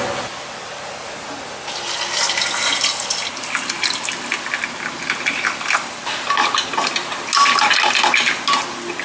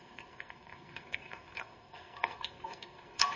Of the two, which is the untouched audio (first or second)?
first